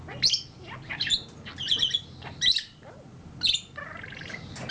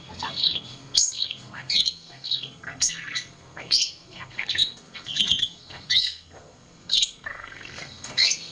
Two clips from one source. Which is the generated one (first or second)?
second